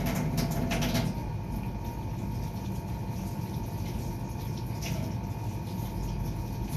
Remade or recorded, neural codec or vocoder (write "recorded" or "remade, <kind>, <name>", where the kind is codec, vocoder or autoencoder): recorded